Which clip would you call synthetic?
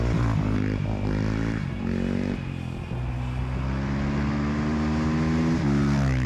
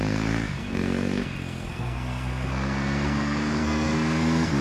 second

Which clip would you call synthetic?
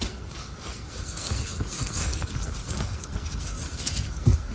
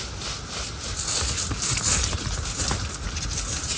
first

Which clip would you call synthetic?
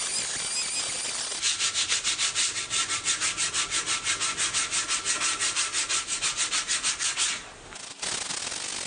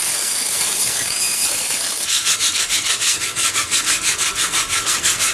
second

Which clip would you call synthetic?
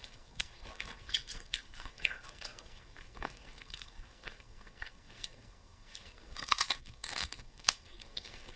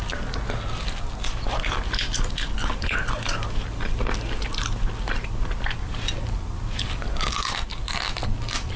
first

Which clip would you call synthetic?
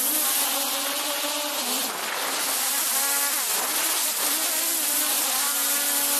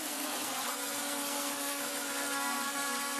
second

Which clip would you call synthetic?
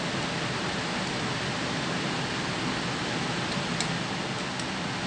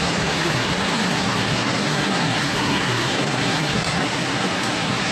second